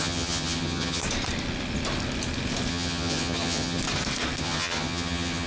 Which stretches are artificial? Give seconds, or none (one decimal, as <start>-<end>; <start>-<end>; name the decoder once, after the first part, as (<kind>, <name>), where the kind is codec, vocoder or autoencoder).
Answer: 0.0-1.0 (vocoder, HiFi-GAN); 2.7-3.8; 4.4-5.5